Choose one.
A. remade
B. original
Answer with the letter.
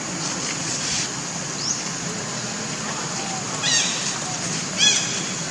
B